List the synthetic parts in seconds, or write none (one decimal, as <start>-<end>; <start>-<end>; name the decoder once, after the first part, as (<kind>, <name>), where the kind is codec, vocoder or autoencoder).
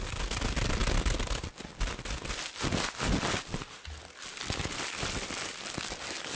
none